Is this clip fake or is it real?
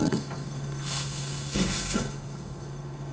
fake